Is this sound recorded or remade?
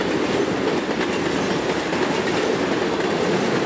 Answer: recorded